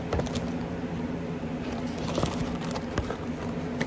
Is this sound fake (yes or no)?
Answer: no